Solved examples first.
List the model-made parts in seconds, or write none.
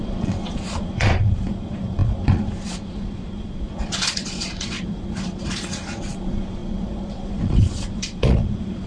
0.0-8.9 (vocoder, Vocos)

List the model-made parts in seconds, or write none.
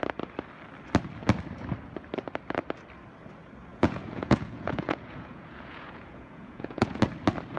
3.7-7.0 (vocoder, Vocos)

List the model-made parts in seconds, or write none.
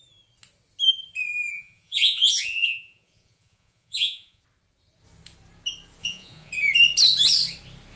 1.5-4.4 (vocoder, Vocos); 6.0-6.5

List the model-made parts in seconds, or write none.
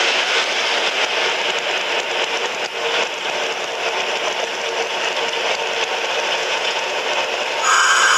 6.4-7.0 (vocoder, Vocos)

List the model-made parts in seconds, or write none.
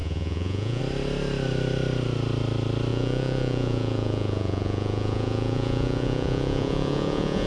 0.0-0.8 (vocoder, Vocos); 2.9-7.5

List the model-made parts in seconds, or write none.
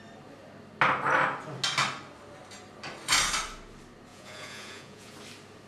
4.1-5.1 (vocoder, Vocos)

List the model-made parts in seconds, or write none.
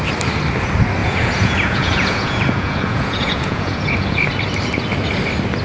1.0-4.3 (vocoder, Vocos)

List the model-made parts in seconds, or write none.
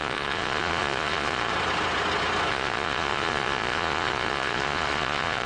0.0-1.5 (vocoder, Vocos); 2.5-5.5